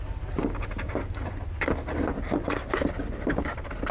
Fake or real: real